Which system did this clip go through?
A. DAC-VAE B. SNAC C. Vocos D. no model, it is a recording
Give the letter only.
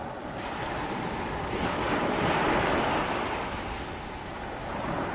D